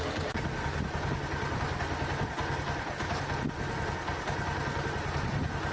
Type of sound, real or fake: real